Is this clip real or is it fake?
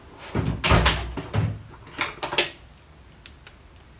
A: real